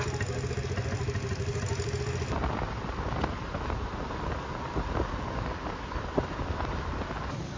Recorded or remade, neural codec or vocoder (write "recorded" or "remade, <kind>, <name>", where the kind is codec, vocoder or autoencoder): recorded